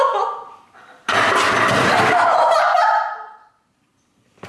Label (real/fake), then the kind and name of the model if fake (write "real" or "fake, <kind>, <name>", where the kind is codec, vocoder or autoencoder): real